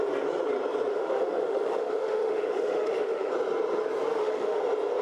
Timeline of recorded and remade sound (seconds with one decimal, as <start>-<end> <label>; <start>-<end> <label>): 0.0-0.9 recorded; 0.9-3.3 remade; 3.3-4.1 recorded; 4.1-4.6 remade; 4.6-5.0 recorded